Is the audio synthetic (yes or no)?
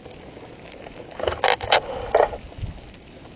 no